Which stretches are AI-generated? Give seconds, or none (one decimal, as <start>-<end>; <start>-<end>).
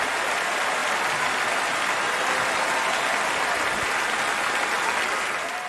none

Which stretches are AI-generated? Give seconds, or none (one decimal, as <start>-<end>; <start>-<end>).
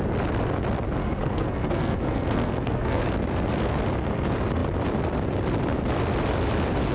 1.0-3.0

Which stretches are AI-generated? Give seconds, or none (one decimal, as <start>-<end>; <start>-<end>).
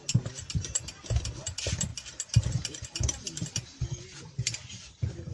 none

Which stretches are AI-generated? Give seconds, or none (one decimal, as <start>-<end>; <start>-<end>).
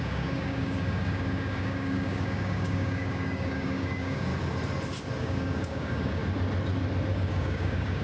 0.0-4.3; 5.2-6.2; 7.1-8.0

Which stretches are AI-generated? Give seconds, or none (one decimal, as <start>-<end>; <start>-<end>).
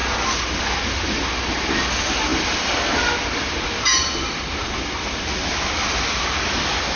none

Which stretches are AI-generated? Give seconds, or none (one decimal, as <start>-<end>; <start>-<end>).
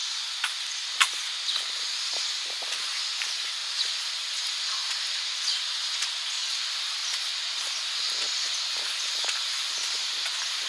none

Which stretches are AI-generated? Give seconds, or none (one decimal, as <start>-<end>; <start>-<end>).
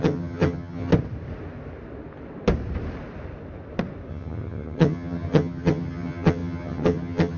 0.0-0.9; 4.1-7.4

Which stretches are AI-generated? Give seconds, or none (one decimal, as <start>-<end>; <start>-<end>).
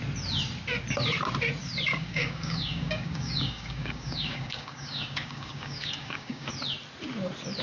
1.9-6.5